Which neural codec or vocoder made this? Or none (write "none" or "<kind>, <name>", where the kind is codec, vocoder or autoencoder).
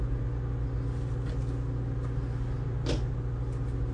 none